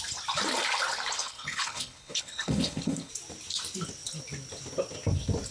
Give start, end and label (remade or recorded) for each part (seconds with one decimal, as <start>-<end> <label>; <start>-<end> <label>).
0.0-1.2 recorded; 1.2-3.1 remade; 3.1-5.5 recorded